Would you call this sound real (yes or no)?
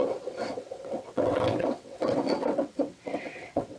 no